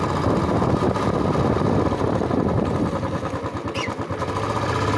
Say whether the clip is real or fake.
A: real